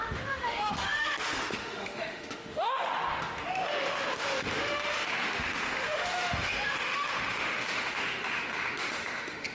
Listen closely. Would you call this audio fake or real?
fake